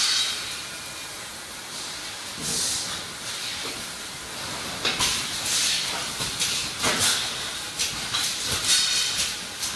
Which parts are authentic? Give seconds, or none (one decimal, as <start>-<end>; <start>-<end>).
0.0-9.8